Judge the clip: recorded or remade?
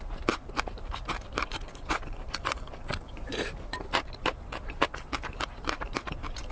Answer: remade